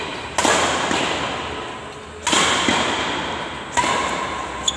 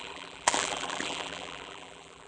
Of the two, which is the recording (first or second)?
first